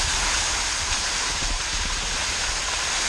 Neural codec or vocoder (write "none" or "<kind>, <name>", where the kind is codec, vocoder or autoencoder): none